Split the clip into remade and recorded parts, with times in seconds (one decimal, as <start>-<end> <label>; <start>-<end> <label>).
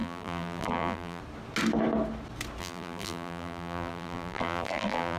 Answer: 0.0-1.2 remade; 1.2-2.6 recorded; 2.6-5.2 remade